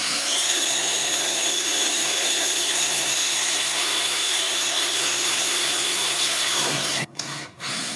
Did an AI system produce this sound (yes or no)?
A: yes